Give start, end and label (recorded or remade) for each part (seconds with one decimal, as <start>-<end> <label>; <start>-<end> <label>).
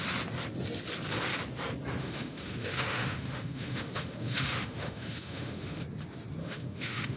0.0-2.0 recorded; 2.0-5.8 remade; 5.8-6.4 recorded; 6.4-7.2 remade